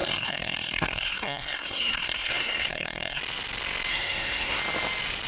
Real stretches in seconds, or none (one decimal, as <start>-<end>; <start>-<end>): 3.2-3.9; 4.6-5.3